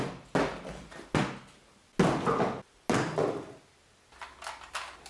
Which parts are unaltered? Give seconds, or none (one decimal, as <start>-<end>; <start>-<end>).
0.0-5.1